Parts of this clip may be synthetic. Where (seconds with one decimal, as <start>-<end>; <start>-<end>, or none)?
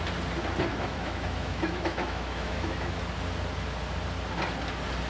0.7-3.0